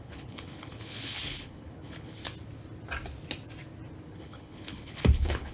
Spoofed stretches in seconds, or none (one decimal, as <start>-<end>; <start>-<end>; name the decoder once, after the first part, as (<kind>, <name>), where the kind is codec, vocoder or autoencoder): 0.0-2.2 (codec, HILCodec); 4.1-5.5